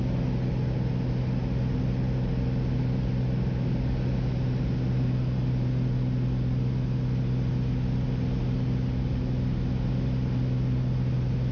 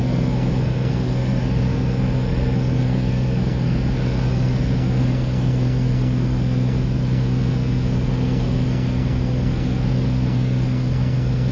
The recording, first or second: first